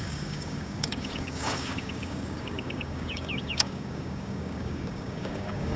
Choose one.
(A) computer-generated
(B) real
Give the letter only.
A